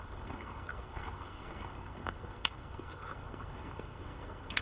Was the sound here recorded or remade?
remade